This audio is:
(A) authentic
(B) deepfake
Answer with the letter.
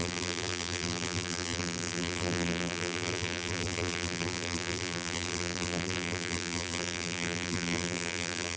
B